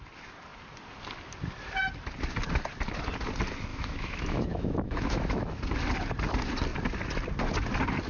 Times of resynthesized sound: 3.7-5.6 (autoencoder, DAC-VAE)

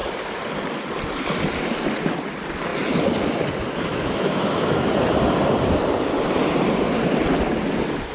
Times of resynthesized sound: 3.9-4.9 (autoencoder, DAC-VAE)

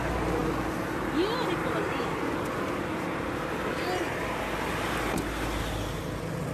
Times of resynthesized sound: none

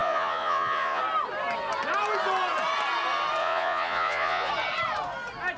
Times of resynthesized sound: 0.0-1.0 (vocoder, Vocos); 3.4-4.5

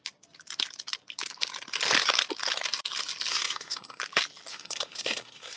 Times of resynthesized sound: 3.3-4.0 (codec, SNAC); 4.5-5.6

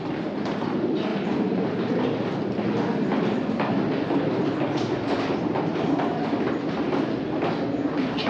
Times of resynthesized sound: 1.1-2.2 (vocoder, BigVGAN v2)

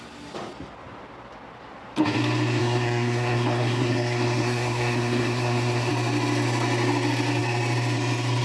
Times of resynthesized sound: 2.6-5.9 (codec, SNAC)